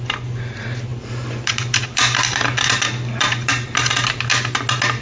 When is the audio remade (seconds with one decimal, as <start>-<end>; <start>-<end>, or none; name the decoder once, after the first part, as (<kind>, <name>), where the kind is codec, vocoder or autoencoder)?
0.9-3.9 (vocoder, BigVGAN v2)